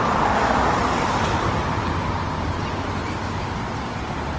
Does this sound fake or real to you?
real